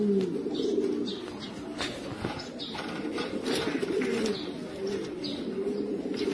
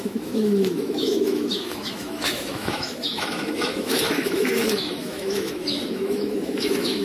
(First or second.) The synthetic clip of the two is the second